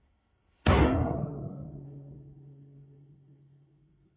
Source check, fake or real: fake